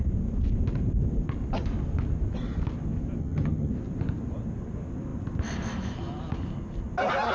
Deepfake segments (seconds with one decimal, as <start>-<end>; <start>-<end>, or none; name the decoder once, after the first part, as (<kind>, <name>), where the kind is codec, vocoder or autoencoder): 3.2-3.7 (vocoder, HiFi-GAN)